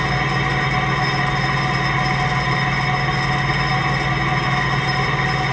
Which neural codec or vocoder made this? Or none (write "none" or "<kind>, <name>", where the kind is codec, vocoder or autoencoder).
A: none